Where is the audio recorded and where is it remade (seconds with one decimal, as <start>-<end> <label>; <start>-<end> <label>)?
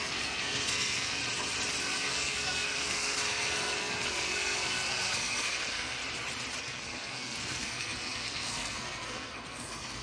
0.0-1.2 remade; 1.2-1.8 recorded; 1.8-6.0 remade; 6.0-6.6 recorded; 6.6-10.0 remade